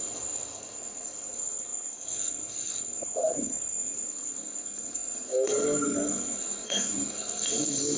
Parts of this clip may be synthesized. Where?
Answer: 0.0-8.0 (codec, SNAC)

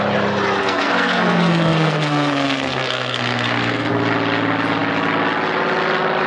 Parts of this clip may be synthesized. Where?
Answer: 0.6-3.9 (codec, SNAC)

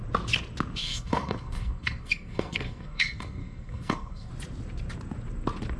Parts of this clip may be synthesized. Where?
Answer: 0.8-4.3 (codec, SNAC)